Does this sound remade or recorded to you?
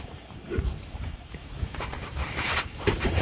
remade